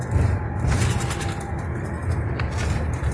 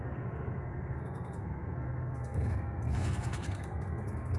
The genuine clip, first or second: first